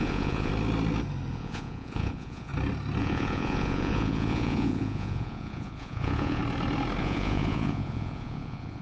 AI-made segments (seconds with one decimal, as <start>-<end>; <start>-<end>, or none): 0.0-0.5; 1.3-2.5; 3.0-6.4; 7.0-8.8